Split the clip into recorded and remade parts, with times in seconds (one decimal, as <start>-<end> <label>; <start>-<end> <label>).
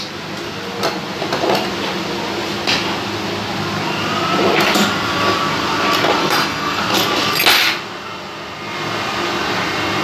0.0-6.2 recorded; 6.2-6.8 remade; 6.8-10.0 recorded